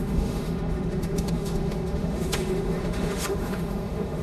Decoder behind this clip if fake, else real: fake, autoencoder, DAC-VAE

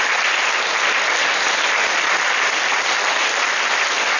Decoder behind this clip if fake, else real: real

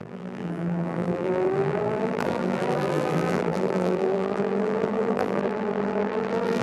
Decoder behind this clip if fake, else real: fake, vocoder, BigVGAN v2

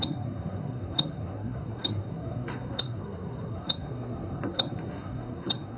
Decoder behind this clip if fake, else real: fake, codec, SNAC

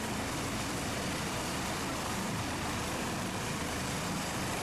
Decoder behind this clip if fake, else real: fake, vocoder, BigVGAN v2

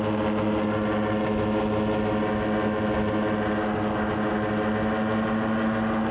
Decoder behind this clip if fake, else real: real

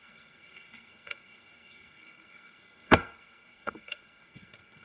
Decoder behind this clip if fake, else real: fake, codec, SNAC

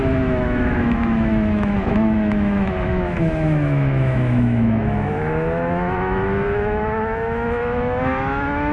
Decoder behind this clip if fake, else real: fake, autoencoder, DAC-VAE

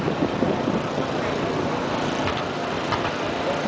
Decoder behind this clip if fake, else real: real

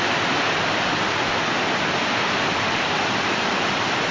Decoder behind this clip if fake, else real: real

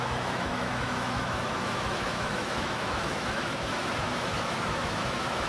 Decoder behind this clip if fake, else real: fake, autoencoder, DAC-VAE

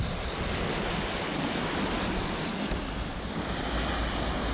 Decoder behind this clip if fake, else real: real